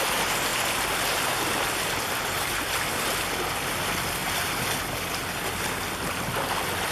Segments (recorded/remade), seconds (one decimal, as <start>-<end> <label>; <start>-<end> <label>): 0.0-0.5 recorded; 0.5-3.8 remade; 3.8-4.2 recorded; 4.2-4.8 remade; 4.8-6.9 recorded